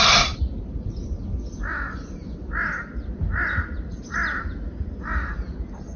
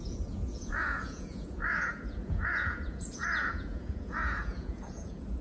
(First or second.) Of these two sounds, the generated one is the second